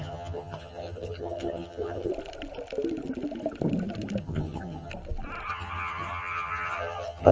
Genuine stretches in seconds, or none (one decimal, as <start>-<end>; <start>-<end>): 2.1-4.2; 4.9-5.5